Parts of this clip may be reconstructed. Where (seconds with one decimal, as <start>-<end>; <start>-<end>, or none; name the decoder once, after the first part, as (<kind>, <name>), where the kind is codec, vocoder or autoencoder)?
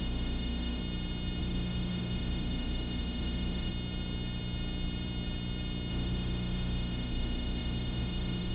0.0-0.8 (autoencoder, DAC-VAE); 1.4-3.7; 5.9-8.5